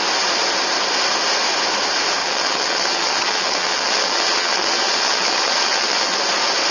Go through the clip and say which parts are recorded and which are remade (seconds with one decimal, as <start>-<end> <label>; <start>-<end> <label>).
0.0-2.2 recorded; 2.2-6.2 remade; 6.2-6.7 recorded